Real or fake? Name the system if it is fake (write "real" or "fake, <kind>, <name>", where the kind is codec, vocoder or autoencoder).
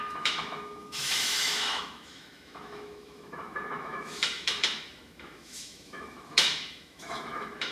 fake, autoencoder, DAC-VAE